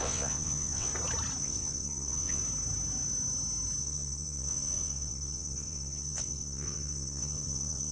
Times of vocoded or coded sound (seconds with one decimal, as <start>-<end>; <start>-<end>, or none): 0.0-0.9; 1.4-2.4; 3.8-7.9